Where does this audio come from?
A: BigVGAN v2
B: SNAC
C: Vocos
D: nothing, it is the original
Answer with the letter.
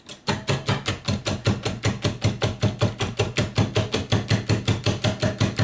D